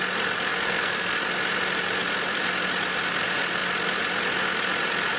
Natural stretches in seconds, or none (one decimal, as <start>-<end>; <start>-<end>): 0.0-0.5; 1.2-5.2